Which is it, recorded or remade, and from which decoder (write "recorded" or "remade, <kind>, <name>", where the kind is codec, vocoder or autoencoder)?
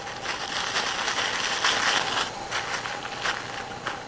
recorded